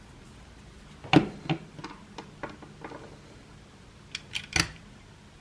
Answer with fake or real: real